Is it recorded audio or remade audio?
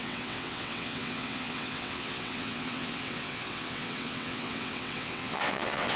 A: remade